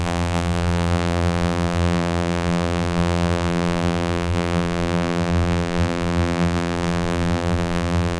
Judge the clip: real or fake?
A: fake